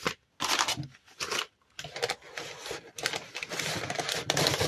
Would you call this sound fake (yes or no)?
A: no